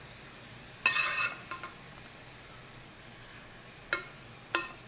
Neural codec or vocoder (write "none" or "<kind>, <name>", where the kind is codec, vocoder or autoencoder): none